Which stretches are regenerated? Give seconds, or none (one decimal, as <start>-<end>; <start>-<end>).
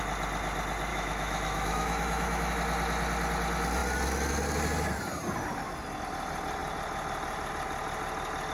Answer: 0.9-2.5